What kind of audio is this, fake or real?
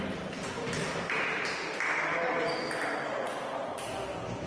real